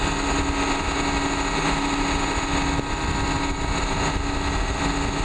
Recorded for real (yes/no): yes